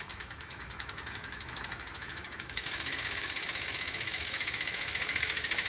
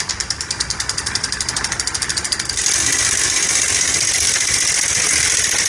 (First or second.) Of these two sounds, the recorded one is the second